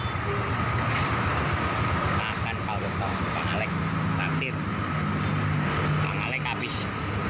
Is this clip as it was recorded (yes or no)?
yes